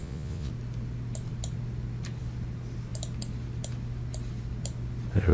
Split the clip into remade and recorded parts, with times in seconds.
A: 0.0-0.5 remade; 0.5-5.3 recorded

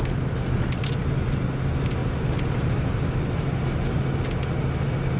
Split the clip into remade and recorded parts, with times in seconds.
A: 0.0-5.2 recorded

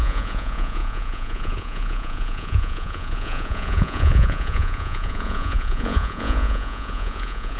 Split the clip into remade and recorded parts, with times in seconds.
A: 0.0-7.6 remade

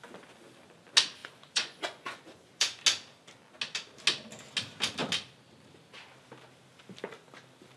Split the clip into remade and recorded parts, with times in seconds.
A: 0.0-1.2 recorded; 1.2-2.8 remade; 2.8-7.8 recorded

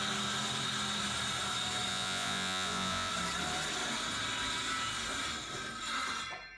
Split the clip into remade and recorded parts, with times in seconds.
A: 0.0-1.9 recorded; 1.9-3.1 remade; 3.1-6.6 recorded

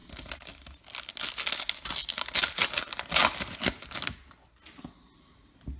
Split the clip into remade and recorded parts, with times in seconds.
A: 0.0-5.8 recorded

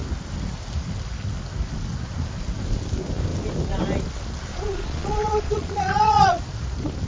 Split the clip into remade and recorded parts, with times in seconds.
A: 0.0-4.5 recorded; 4.5-6.4 remade; 6.4-7.1 recorded

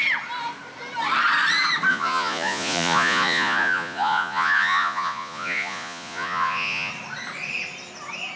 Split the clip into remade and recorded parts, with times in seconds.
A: 0.0-1.9 recorded; 1.9-6.9 remade; 6.9-8.4 recorded